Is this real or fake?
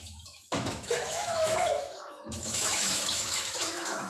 fake